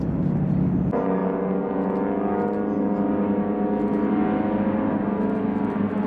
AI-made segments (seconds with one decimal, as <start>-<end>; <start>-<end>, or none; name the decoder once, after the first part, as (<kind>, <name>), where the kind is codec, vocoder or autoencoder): none

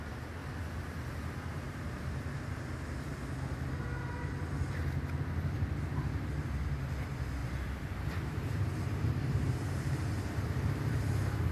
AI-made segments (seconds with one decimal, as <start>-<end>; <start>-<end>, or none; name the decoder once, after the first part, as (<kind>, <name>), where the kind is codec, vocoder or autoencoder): 0.4-2.5 (vocoder, BigVGAN v2); 7.4-11.1

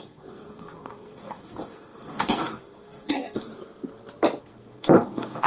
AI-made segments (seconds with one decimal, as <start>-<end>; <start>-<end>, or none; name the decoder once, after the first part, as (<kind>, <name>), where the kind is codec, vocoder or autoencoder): 0.0-3.5 (codec, SNAC); 4.4-5.5

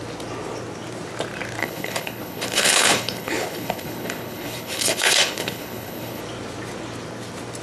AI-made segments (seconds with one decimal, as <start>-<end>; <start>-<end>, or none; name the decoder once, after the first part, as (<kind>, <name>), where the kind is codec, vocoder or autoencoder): 1.6-6.2 (codec, HILCodec)